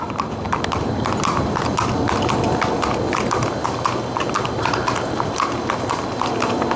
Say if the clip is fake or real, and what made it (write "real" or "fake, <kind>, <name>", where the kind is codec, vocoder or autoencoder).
real